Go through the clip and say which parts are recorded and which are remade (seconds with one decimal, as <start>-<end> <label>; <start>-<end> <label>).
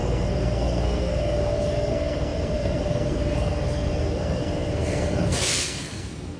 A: 0.0-6.4 remade